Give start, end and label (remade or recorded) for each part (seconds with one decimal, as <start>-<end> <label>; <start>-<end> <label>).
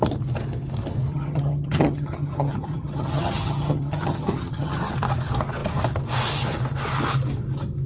0.0-1.1 recorded; 1.1-4.9 remade; 4.9-7.9 recorded